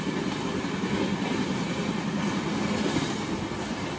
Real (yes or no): yes